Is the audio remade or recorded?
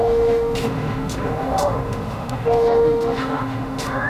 remade